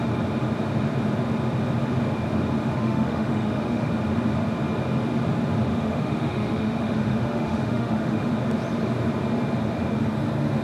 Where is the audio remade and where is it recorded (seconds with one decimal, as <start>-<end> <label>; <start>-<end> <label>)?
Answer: 0.0-2.7 recorded; 2.7-3.9 remade; 3.9-5.7 recorded; 5.7-8.3 remade; 8.3-10.6 recorded